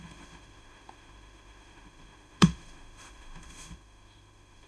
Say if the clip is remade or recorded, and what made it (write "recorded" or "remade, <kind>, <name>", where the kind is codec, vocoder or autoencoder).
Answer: remade, autoencoder, DAC-VAE